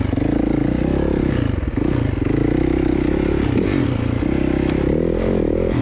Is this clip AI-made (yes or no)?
no